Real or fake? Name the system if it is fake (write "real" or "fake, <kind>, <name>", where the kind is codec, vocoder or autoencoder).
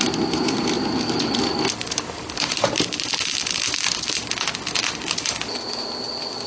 real